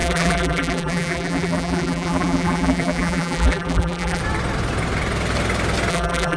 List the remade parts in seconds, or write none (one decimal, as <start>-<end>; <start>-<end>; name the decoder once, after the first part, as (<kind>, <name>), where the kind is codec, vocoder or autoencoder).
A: 0.0-4.2 (vocoder, BigVGAN v2); 5.9-6.4